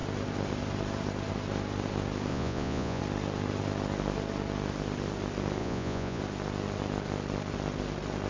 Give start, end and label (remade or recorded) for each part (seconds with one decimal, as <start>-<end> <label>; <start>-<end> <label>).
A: 0.0-2.3 recorded; 2.3-3.0 remade; 3.0-5.6 recorded; 5.6-6.2 remade; 6.2-8.3 recorded